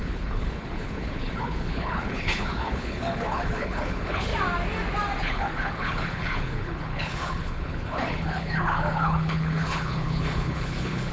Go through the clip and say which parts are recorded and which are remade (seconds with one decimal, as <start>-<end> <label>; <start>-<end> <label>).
0.0-4.3 remade; 4.3-5.2 recorded; 5.2-11.1 remade